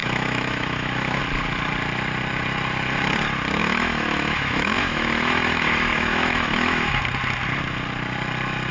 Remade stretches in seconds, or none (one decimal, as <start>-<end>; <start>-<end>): 0.0-1.2; 3.6-7.0